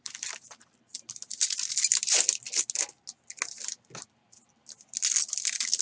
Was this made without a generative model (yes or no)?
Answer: yes